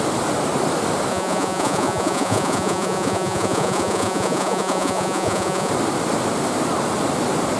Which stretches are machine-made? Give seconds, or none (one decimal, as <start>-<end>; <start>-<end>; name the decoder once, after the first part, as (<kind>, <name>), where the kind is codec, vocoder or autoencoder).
1.1-5.7 (vocoder, Vocos)